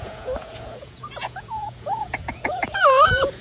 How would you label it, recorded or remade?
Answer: remade